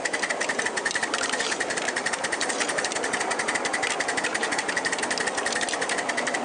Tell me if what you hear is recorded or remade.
recorded